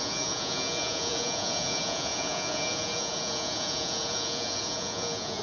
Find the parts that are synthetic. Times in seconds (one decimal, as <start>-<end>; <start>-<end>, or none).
0.0-5.4